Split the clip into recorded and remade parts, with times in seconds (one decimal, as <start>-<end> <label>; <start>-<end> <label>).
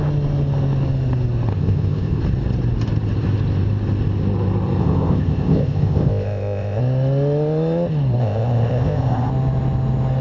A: 0.0-1.5 recorded; 1.5-2.2 remade; 2.2-4.8 recorded; 4.8-6.8 remade; 6.8-8.2 recorded; 8.2-9.3 remade; 9.3-10.2 recorded